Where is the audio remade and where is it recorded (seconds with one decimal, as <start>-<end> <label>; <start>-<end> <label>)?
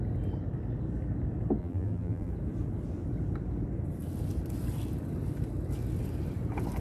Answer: 0.0-1.6 recorded; 1.6-2.3 remade; 2.3-6.8 recorded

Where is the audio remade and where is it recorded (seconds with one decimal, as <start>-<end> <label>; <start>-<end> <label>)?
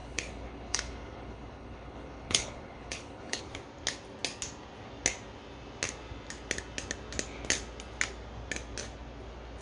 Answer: 0.0-3.4 remade; 3.4-9.6 recorded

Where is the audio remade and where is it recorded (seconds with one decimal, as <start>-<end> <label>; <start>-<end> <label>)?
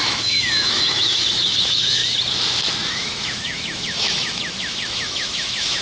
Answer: 0.0-2.0 remade; 2.0-2.9 recorded; 2.9-5.8 remade